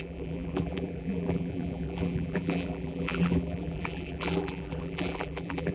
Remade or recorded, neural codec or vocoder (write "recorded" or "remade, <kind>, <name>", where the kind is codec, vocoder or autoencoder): remade, vocoder, BigVGAN v2